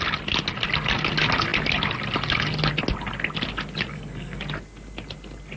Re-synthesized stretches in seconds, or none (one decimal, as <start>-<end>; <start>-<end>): 3.9-4.4